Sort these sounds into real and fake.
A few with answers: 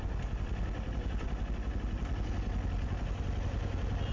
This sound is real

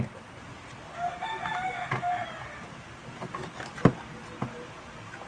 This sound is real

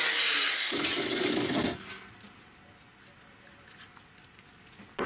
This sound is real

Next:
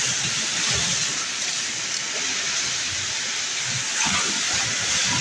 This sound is real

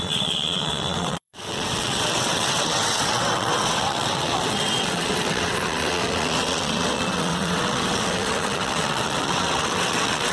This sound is fake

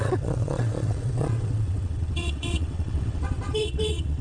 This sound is fake